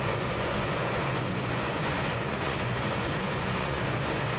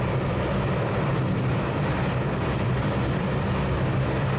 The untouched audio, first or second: second